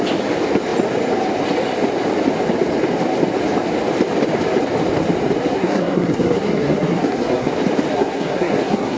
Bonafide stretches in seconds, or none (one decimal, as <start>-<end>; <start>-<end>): 0.0-5.4; 7.5-7.9